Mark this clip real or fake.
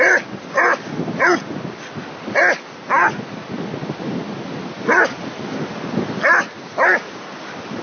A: real